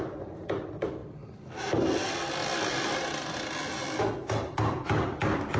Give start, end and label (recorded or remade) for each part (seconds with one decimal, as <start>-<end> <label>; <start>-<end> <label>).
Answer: 0.0-5.6 recorded